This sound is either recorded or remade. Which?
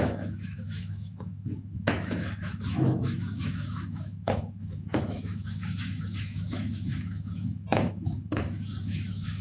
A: remade